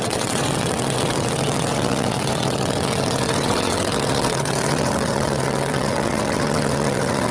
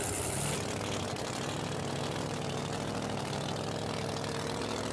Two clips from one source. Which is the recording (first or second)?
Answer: second